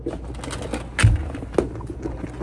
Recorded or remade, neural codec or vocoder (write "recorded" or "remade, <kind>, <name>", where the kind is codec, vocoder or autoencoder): recorded